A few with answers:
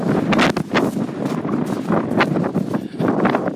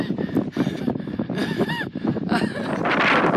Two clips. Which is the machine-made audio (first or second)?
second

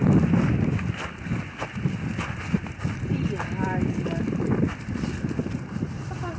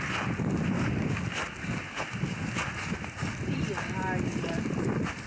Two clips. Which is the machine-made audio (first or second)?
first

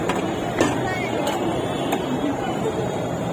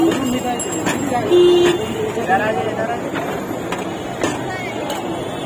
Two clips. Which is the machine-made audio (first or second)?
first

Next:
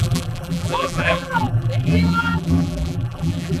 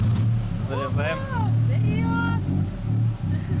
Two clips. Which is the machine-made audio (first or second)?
first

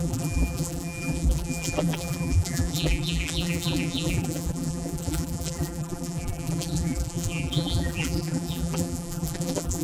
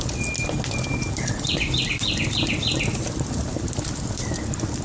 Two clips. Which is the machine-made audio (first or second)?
first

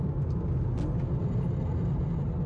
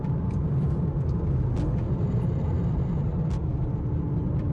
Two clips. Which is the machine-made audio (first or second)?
second